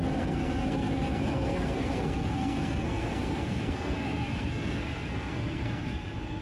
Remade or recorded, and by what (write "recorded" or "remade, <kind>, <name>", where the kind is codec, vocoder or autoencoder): remade, codec, SNAC